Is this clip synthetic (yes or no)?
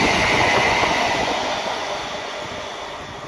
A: yes